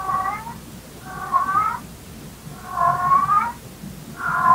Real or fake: real